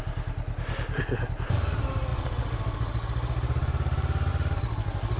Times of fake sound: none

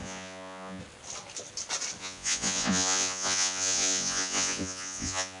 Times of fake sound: 0.0-0.8 (vocoder, Vocos); 2.0-5.4

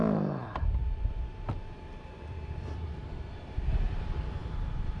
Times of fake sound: 0.4-3.4 (vocoder, BigVGAN v2); 4.4-5.0

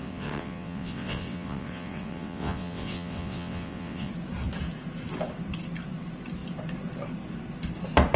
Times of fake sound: 0.0-4.1 (vocoder, WaveNeXt)

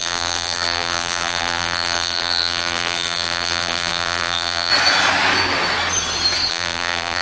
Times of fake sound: 0.0-4.7 (vocoder, BigVGAN v2); 6.5-7.2

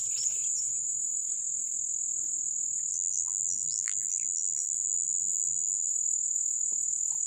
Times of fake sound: 2.9-5.9 (vocoder, BigVGAN v2)